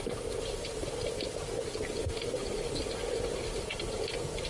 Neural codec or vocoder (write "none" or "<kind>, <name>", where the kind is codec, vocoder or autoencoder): none